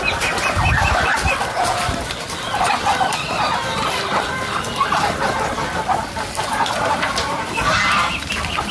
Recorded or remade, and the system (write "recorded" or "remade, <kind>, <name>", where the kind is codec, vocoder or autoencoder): recorded